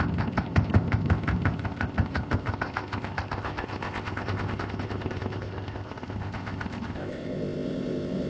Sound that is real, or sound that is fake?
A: fake